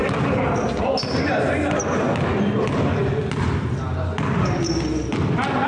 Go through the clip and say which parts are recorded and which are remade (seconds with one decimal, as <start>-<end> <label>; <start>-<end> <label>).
0.0-5.7 recorded